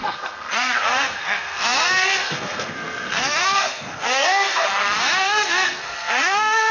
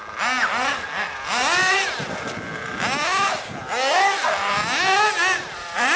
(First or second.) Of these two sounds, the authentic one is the second